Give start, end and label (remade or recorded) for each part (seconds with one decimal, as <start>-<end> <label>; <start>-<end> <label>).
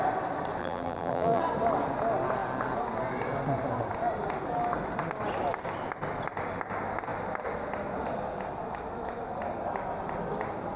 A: 0.0-0.6 recorded; 0.6-1.4 remade; 1.4-10.8 recorded